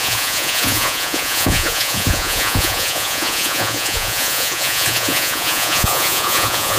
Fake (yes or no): yes